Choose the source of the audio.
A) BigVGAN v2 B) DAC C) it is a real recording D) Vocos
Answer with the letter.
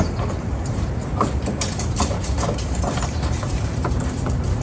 A